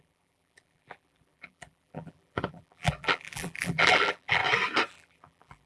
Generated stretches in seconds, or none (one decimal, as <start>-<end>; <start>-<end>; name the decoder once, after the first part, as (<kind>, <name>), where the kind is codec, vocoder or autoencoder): 0.0-4.4 (vocoder, BigVGAN v2); 4.9-5.7